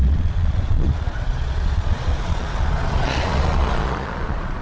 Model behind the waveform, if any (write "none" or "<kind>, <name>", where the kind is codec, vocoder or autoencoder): vocoder, Vocos